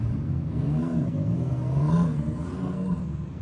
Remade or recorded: remade